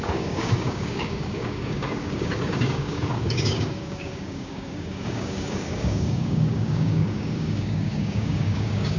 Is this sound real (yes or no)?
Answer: no